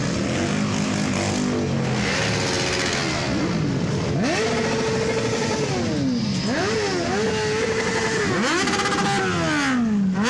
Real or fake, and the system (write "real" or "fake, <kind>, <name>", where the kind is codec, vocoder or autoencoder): real